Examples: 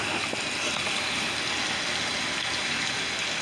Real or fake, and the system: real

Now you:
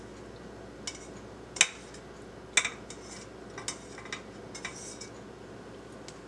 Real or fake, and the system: real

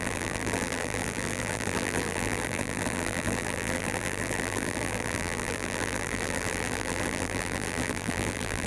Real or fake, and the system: fake, vocoder, BigVGAN v2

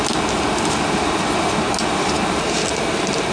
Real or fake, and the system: real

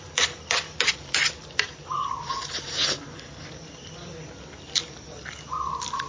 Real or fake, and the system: real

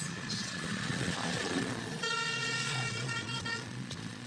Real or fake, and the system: fake, vocoder, Vocos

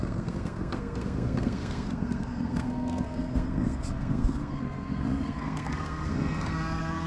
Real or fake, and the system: fake, codec, SNAC